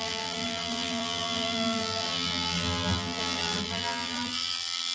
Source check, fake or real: fake